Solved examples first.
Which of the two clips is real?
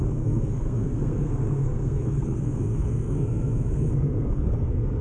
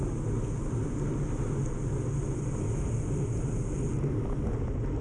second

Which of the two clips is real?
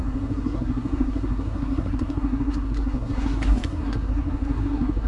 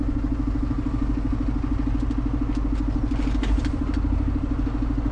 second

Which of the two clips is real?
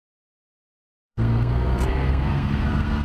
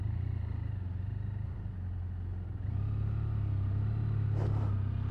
second